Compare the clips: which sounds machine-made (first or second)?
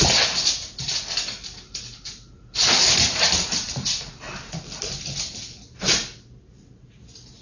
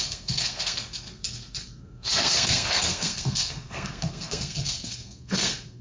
second